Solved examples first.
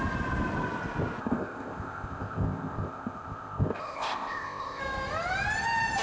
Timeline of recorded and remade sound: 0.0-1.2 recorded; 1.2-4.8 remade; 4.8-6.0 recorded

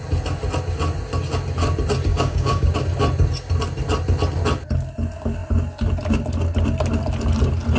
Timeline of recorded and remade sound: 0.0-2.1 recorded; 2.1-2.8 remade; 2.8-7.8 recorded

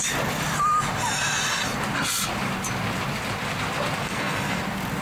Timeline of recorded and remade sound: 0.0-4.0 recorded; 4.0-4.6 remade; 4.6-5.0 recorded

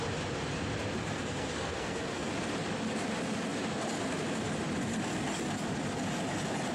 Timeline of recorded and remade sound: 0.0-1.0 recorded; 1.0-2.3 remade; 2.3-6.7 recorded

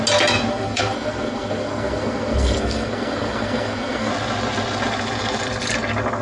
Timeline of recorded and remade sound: 0.0-0.5 recorded; 0.5-4.1 remade; 4.1-6.2 recorded

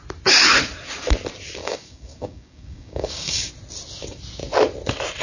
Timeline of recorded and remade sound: 0.0-1.6 recorded; 1.6-3.5 remade; 3.5-5.2 recorded

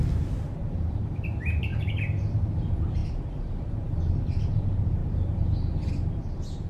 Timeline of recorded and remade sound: 0.0-0.6 recorded; 0.6-1.7 remade; 1.7-2.3 recorded; 2.3-6.7 remade

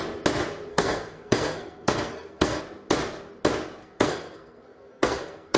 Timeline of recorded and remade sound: 0.0-0.7 recorded; 0.7-2.6 remade; 2.6-3.8 recorded; 3.8-5.6 remade